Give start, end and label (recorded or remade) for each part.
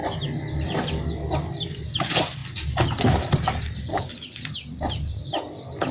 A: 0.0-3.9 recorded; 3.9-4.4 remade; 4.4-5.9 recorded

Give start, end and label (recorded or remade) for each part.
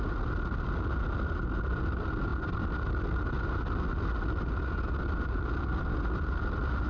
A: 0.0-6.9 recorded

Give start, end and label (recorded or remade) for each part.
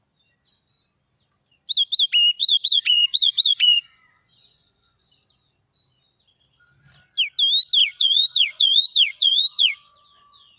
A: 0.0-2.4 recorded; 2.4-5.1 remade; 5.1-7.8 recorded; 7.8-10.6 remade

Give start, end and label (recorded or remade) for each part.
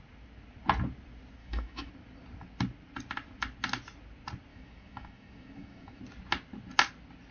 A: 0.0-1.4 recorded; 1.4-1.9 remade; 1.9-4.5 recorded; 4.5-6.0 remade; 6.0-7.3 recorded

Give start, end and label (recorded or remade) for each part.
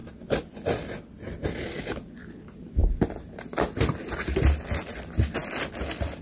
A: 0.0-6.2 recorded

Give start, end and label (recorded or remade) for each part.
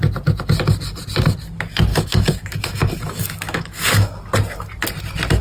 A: 0.0-1.9 recorded; 1.9-4.2 remade; 4.2-5.4 recorded